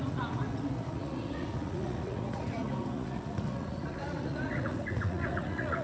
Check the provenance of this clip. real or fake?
fake